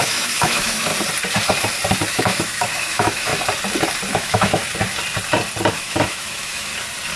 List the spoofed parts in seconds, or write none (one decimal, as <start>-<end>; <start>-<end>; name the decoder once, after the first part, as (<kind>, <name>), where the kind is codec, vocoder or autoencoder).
0.0-0.9 (autoencoder, DAC-VAE); 2.1-3.3; 4.1-4.6; 5.7-6.7